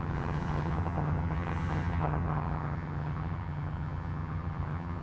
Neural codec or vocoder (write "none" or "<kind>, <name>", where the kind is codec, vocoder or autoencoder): vocoder, HiFi-GAN